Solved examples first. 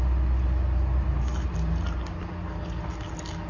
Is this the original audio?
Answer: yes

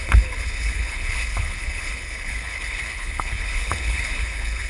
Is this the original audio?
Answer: no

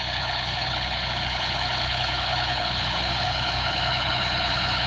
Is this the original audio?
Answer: no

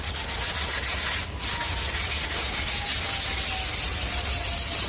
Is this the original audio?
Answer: yes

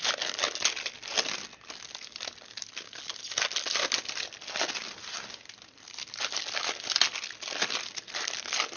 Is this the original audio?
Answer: yes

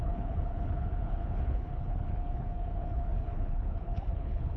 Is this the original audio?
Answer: no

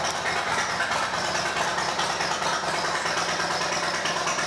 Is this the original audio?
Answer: yes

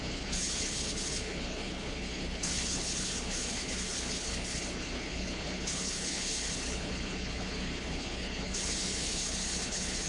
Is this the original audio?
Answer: no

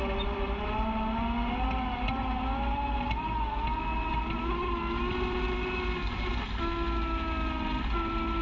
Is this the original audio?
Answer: yes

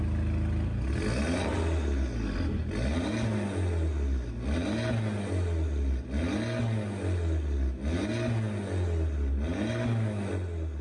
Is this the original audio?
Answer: yes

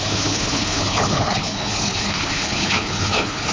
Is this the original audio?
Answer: no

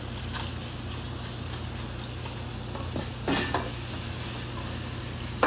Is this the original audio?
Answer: yes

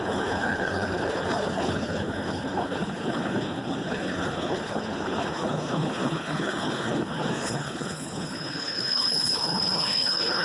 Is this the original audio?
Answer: no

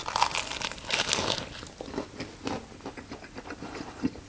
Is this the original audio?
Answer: yes